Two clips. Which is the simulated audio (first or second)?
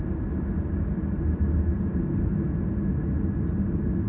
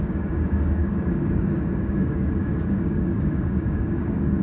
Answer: second